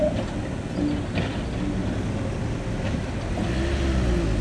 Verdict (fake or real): real